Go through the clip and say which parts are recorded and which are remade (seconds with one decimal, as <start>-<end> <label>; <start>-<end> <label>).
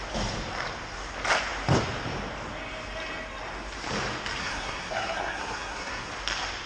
0.0-4.4 recorded; 4.4-6.1 remade; 6.1-6.7 recorded